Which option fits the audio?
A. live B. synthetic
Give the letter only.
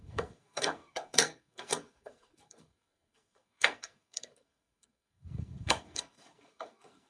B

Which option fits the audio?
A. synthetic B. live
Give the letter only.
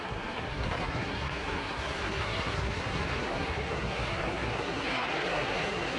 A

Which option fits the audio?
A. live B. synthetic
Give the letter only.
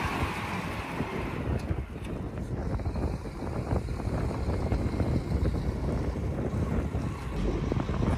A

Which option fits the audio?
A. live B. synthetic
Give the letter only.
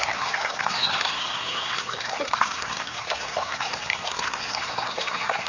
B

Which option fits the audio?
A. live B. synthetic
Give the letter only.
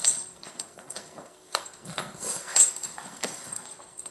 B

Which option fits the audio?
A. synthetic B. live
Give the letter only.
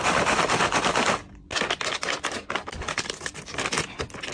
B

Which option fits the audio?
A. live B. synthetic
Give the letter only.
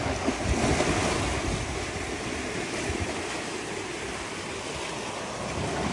A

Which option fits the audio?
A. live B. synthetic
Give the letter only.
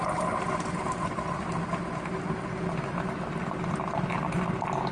A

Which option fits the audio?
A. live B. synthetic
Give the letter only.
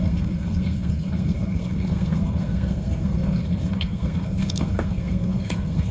B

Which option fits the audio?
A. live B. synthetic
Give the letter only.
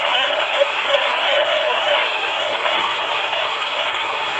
B